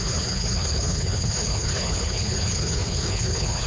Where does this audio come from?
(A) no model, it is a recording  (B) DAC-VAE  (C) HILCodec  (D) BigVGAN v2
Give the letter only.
C